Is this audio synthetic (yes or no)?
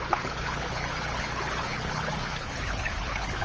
yes